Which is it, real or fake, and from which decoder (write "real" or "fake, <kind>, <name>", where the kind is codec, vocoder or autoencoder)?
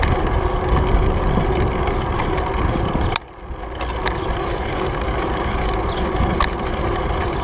real